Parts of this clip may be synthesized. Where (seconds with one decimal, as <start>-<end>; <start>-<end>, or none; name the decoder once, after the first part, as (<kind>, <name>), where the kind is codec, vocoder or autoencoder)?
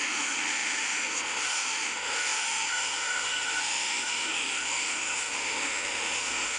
0.0-6.6 (autoencoder, DAC-VAE)